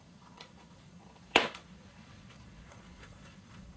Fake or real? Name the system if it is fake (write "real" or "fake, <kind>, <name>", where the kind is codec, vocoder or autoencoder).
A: fake, vocoder, Vocos